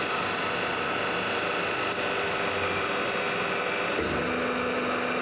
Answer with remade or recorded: recorded